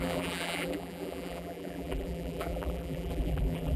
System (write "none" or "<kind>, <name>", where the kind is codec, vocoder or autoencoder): vocoder, BigVGAN v2